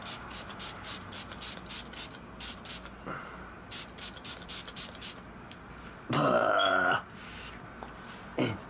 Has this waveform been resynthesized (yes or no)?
no